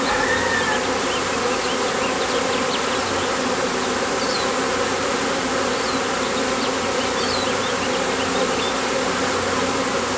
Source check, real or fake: real